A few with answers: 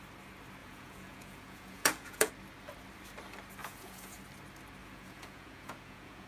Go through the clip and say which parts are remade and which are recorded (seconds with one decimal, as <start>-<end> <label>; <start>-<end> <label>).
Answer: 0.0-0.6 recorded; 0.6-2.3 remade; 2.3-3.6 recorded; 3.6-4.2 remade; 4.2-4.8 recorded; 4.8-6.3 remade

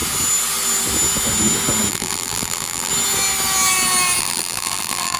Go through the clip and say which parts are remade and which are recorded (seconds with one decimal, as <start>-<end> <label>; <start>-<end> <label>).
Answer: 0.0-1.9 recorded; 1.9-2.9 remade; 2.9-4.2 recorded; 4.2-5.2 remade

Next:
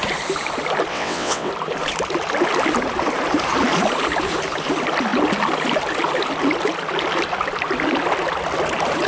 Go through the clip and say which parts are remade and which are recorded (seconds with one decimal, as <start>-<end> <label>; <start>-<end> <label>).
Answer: 0.0-0.9 recorded; 0.9-1.5 remade; 1.5-9.1 recorded